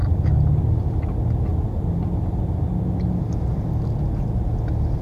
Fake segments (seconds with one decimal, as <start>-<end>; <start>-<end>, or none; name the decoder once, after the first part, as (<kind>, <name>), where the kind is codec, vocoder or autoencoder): 0.0-0.6 (vocoder, BigVGAN v2)